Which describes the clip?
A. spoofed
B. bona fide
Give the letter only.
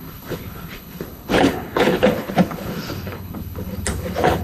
A